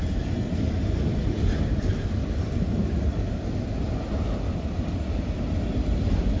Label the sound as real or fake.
real